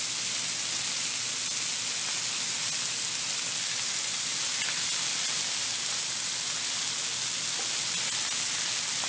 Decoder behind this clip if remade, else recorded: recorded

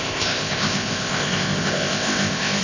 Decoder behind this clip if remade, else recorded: remade, codec, ZipCodec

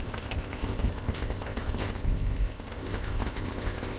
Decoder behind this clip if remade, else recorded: remade, codec, ZipCodec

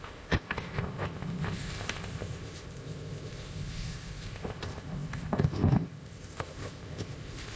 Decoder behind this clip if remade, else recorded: remade, codec, ZipCodec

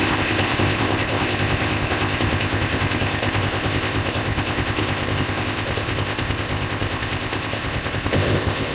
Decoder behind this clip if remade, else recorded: remade, codec, ZipCodec